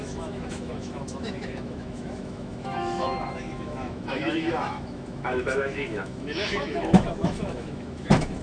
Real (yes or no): no